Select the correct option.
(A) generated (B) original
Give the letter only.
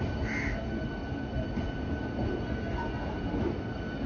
B